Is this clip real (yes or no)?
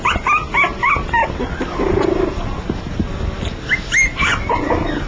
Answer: yes